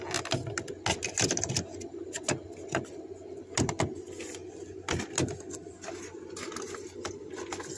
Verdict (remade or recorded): recorded